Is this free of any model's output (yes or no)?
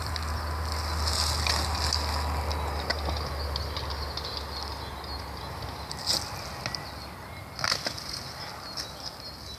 yes